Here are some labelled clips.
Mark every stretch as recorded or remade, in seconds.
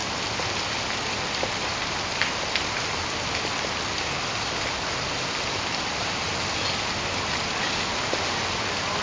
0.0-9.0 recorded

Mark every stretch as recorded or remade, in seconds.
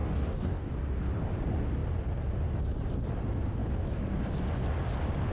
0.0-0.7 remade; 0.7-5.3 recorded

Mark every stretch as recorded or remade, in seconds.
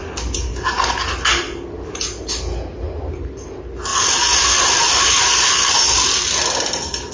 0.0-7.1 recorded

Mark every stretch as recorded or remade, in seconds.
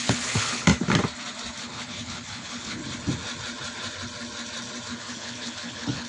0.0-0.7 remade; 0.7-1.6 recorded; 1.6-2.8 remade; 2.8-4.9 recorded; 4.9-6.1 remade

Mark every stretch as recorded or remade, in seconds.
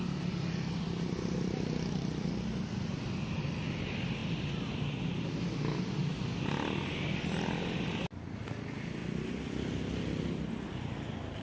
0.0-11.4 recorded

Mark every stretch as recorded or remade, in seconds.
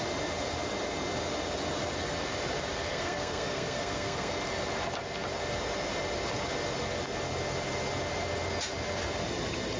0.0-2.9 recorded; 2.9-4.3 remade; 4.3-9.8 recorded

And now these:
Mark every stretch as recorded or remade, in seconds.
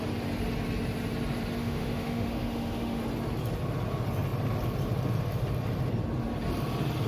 0.0-1.6 recorded; 1.6-3.0 remade; 3.0-7.1 recorded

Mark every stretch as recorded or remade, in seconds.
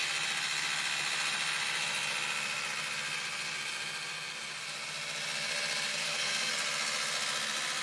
0.0-5.9 recorded; 5.9-6.5 remade; 6.5-7.8 recorded